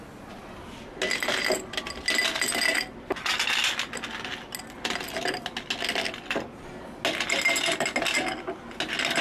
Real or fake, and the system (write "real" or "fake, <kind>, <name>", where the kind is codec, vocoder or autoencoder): real